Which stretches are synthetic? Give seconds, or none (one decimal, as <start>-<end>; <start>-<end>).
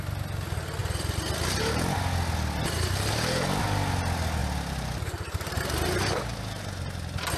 4.4-5.6